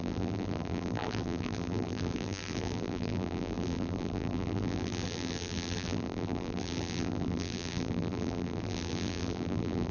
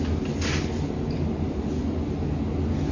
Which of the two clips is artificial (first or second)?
first